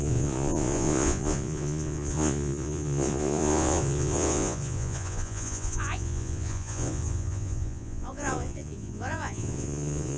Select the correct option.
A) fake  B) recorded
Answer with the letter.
A